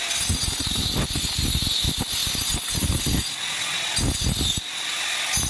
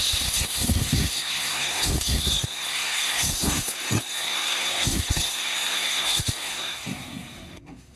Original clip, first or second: first